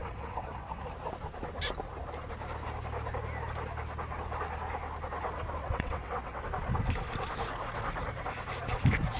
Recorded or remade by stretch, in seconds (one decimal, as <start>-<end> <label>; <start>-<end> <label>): 0.0-0.8 remade; 0.8-5.6 recorded; 5.6-6.4 remade; 6.4-9.2 recorded